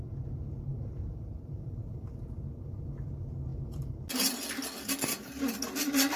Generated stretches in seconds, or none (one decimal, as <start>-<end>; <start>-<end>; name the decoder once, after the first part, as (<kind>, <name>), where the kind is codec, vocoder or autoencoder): 0.7-1.8 (vocoder, BigVGAN v2)